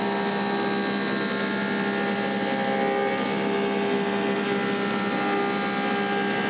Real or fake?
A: real